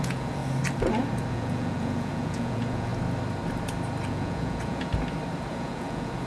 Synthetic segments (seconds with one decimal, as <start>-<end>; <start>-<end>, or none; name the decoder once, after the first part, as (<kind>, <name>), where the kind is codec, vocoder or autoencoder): 0.0-0.4 (vocoder, Vocos); 1.3-2.9; 4.1-4.9; 5.5-6.3